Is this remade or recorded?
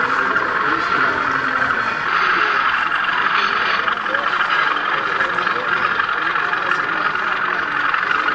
recorded